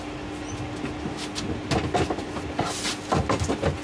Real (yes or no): yes